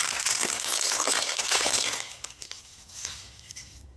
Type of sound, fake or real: fake